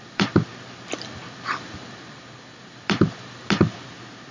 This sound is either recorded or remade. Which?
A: recorded